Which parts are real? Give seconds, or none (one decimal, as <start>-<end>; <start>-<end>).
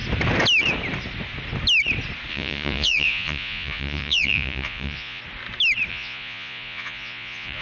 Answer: 0.0-2.3; 5.2-5.9